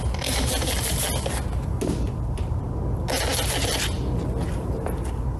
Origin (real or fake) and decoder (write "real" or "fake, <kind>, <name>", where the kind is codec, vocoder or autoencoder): real